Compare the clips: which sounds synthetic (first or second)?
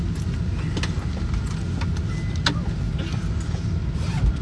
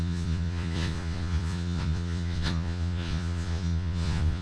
second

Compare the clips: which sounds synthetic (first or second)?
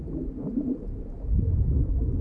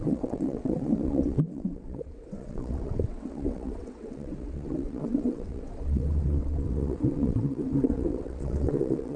second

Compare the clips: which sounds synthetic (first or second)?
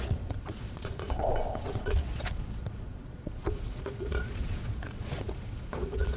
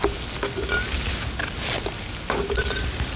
first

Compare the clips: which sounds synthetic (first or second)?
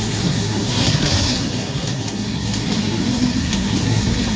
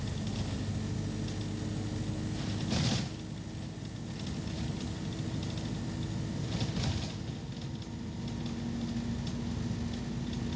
first